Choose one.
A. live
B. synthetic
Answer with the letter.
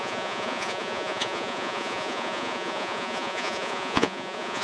B